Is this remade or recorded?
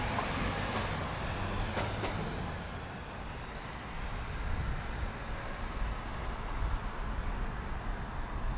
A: recorded